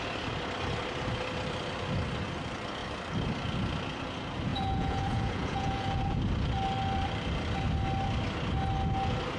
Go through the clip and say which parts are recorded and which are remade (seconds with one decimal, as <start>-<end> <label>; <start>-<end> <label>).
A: 0.0-4.5 recorded; 4.5-6.2 remade; 6.2-9.4 recorded